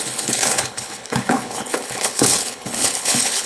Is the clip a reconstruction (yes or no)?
yes